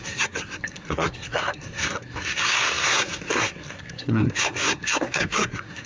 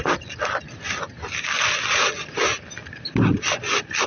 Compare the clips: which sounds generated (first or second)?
first